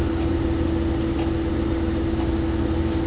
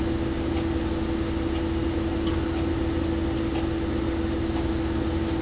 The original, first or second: second